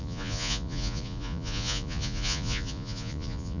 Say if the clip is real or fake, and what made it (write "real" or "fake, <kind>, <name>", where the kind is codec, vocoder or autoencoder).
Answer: fake, vocoder, Vocos